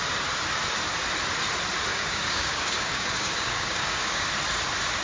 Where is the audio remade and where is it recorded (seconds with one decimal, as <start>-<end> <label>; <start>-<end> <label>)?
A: 0.0-1.9 recorded; 1.9-4.3 remade; 4.3-5.0 recorded